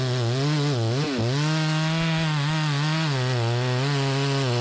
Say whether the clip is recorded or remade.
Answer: recorded